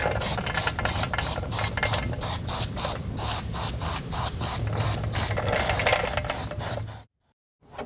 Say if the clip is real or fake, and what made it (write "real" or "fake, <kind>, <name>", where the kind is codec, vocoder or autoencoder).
real